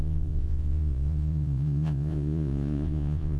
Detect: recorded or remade remade